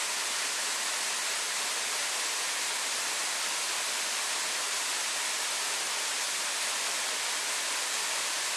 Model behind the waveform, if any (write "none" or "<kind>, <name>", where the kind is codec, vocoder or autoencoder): none